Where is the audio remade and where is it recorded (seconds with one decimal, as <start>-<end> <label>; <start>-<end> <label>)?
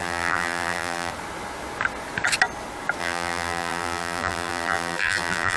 0.0-1.1 remade; 1.1-3.0 recorded; 3.0-5.6 remade